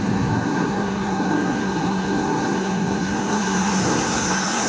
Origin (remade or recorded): remade